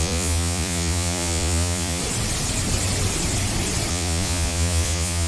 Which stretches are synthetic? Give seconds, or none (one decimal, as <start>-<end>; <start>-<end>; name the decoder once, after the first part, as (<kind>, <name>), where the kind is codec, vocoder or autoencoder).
0.0-2.0 (vocoder, Vocos); 3.9-5.3